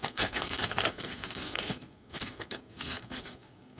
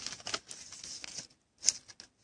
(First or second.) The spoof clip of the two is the first